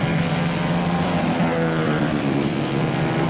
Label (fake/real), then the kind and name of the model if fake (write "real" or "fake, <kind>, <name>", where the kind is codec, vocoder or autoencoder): real